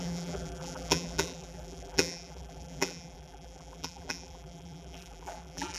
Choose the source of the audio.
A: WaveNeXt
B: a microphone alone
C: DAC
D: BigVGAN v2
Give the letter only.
D